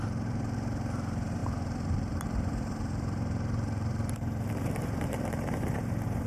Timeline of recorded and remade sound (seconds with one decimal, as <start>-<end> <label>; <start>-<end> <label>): 0.0-6.3 remade